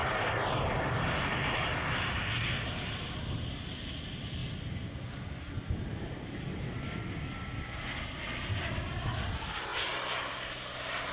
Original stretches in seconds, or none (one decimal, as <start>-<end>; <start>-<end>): 0.0-11.1